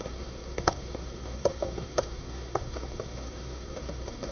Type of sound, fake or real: fake